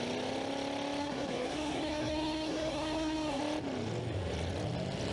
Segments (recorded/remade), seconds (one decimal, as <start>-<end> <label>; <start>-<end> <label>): 0.0-1.0 recorded; 1.0-3.4 remade; 3.4-5.1 recorded